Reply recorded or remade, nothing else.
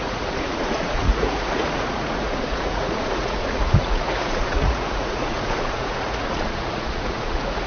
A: remade